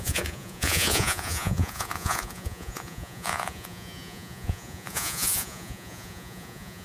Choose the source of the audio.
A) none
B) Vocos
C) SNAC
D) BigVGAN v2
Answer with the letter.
B